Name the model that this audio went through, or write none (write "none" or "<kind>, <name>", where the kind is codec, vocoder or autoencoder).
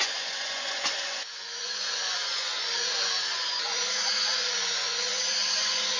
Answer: vocoder, Vocos